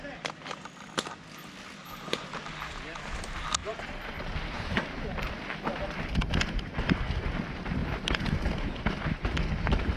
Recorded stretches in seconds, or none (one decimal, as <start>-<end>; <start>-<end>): 0.0-1.8; 2.4-3.6; 5.3-7.8; 9.4-10.0